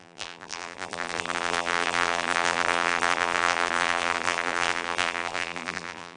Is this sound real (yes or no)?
no